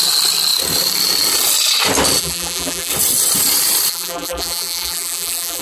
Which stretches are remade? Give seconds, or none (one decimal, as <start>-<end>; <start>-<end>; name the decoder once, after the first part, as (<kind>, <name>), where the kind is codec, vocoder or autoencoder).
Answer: 2.2-2.9 (vocoder, BigVGAN v2); 3.9-5.6